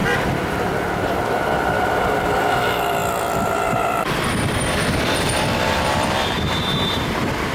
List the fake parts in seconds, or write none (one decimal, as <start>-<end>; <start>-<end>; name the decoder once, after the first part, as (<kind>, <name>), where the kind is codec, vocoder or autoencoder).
0.0-2.0 (vocoder, BigVGAN v2); 3.0-6.9